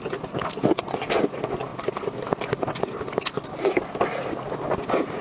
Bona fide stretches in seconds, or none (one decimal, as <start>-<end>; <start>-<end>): 0.0-5.2